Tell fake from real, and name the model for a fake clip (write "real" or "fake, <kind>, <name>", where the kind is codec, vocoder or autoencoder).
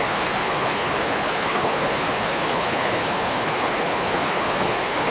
fake, codec, HILCodec